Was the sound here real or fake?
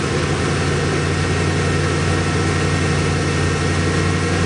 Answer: real